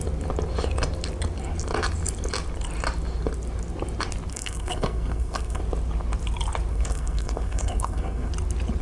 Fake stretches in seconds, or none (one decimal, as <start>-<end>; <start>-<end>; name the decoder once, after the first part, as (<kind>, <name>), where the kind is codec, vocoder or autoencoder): 4.3-5.6 (codec, SNAC); 6.7-8.3